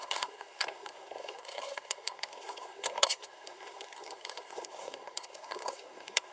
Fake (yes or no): yes